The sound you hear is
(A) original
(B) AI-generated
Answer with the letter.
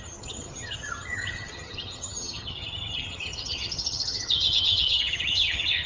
B